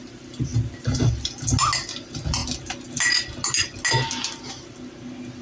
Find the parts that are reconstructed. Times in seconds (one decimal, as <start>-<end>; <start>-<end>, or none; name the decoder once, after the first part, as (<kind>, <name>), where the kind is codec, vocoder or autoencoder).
none